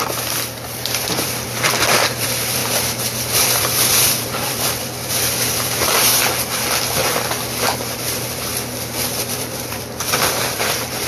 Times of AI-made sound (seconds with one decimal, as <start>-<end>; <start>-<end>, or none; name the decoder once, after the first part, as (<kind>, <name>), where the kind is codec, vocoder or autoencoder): 0.0-2.6 (vocoder, BigVGAN v2); 3.3-6.1; 7.5-8.5; 9.2-11.1